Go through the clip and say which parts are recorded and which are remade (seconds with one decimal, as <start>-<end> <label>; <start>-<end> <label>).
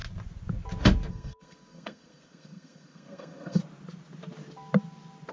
0.0-1.1 recorded; 1.1-3.6 remade; 3.6-5.3 recorded